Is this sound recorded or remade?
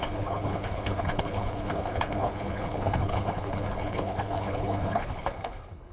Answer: remade